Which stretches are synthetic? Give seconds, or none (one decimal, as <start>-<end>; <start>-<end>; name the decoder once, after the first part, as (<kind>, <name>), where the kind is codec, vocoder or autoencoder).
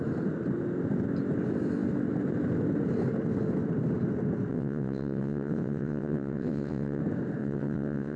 4.5-7.0 (vocoder, WaveNeXt); 7.4-8.2